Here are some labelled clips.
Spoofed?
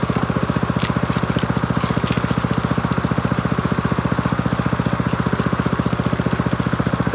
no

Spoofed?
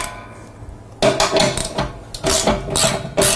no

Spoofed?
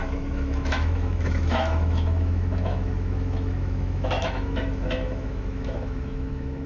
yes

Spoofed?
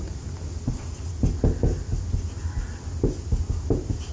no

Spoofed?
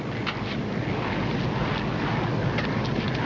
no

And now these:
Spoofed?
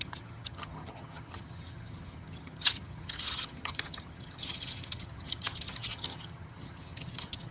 yes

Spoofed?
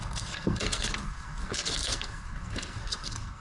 yes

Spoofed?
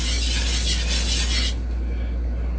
no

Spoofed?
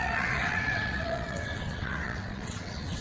yes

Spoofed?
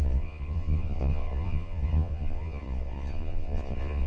yes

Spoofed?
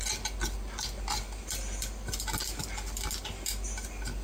no